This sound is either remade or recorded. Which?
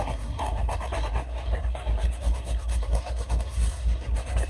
remade